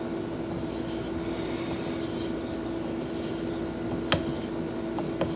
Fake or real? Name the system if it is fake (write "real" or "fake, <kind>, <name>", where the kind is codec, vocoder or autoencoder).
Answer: real